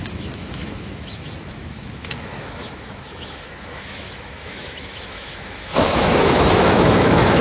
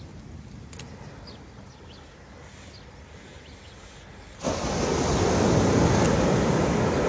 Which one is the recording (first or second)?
second